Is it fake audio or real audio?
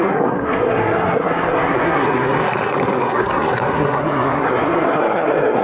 fake